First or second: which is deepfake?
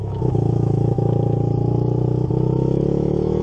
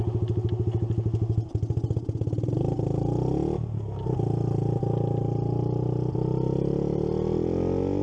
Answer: first